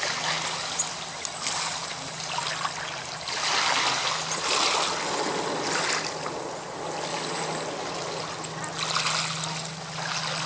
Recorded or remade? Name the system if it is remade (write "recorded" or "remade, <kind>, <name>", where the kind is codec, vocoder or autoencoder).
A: recorded